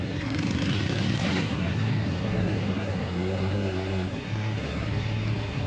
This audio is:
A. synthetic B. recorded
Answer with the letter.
A